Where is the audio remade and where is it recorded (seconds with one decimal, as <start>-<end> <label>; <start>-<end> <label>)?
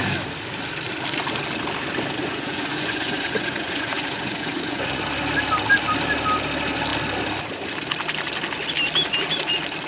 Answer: 0.0-2.2 recorded; 2.2-5.0 remade; 5.0-9.9 recorded